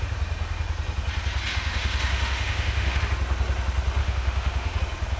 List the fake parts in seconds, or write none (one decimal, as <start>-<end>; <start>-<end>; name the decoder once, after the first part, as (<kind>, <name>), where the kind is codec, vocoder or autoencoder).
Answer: 1.5-3.0 (autoencoder, DAC-VAE); 4.0-4.8